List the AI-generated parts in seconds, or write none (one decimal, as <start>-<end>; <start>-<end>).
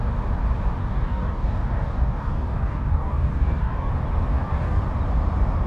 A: 0.8-3.9; 4.3-4.8